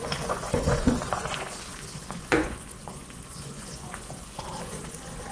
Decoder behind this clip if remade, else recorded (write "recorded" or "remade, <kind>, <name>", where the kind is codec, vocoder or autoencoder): remade, vocoder, Vocos